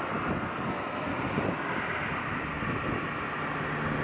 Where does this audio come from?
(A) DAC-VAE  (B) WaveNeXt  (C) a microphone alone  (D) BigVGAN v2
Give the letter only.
C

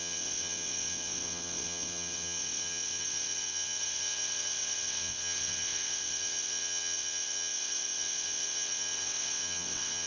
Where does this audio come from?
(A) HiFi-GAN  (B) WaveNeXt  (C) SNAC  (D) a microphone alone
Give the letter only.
B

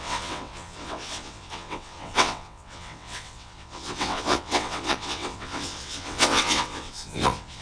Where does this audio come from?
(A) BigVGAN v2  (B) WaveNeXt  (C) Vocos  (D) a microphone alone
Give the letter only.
B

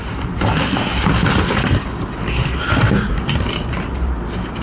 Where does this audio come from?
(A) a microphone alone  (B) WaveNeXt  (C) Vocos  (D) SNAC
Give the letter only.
A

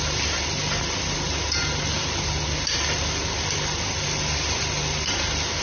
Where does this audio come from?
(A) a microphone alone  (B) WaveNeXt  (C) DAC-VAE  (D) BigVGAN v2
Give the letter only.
A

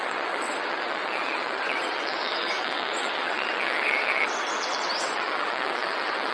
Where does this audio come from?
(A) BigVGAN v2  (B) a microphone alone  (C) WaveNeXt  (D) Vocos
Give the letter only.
C